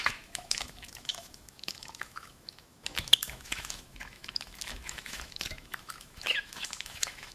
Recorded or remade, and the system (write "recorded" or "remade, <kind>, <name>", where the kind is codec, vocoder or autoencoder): remade, autoencoder, DAC-VAE